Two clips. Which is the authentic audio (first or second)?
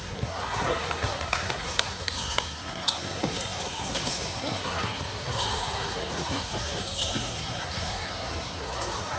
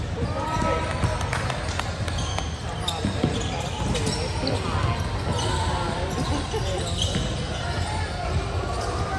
second